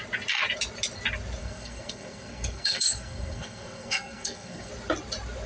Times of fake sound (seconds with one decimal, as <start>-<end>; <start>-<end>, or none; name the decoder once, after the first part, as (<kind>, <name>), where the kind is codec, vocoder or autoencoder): 1.4-4.7 (codec, SNAC)